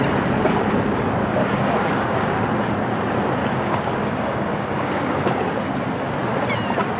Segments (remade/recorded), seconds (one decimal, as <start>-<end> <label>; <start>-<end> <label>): 0.0-1.4 recorded; 1.4-2.4 remade; 2.4-3.4 recorded; 3.4-5.5 remade; 5.5-7.0 recorded